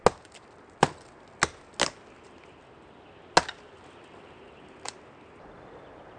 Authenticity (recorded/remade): recorded